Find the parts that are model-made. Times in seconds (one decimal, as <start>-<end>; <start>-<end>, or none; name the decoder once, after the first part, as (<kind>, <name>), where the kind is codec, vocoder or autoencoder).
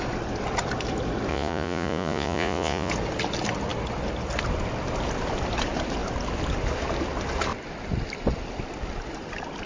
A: 1.3-2.9 (vocoder, Vocos)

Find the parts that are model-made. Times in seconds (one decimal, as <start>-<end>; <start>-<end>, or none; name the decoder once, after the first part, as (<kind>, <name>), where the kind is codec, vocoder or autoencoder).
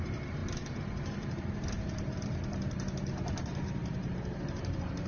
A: 0.0-5.1 (vocoder, BigVGAN v2)